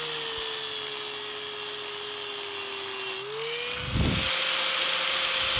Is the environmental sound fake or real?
real